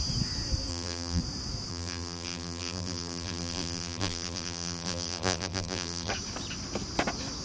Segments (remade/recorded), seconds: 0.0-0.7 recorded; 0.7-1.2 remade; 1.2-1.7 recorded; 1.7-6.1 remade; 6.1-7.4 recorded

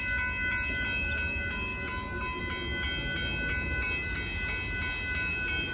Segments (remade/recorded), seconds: 0.0-5.7 recorded